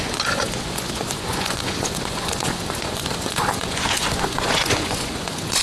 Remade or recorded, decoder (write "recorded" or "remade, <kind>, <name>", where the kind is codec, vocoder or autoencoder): remade, vocoder, Vocos